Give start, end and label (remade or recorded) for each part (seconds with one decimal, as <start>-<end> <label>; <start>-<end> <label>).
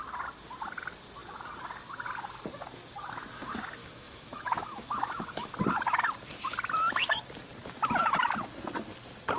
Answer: 0.0-3.8 recorded; 3.8-5.5 remade; 5.5-9.4 recorded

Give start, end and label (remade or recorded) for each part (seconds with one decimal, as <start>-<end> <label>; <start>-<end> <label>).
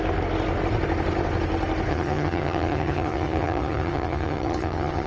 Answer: 0.0-1.9 recorded; 1.9-5.1 remade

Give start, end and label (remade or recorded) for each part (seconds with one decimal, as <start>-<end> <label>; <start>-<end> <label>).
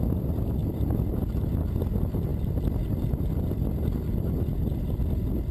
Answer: 0.0-0.6 recorded; 0.6-1.5 remade; 1.5-2.3 recorded; 2.3-5.5 remade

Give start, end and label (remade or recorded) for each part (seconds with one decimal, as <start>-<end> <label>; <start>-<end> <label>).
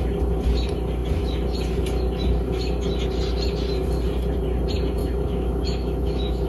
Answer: 0.0-5.0 recorded; 5.0-6.5 remade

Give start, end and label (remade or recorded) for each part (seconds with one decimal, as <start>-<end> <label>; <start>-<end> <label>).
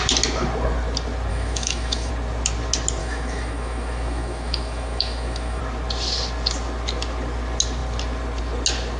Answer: 0.0-1.3 recorded; 1.3-2.1 remade; 2.1-3.0 recorded; 3.0-5.6 remade; 5.6-9.0 recorded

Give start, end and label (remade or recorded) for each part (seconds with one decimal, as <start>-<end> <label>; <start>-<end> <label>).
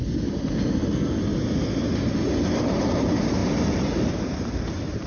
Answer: 0.0-2.4 recorded; 2.4-5.1 remade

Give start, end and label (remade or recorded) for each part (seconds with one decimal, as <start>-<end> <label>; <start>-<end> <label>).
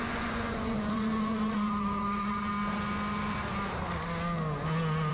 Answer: 0.0-2.5 remade; 2.5-5.1 recorded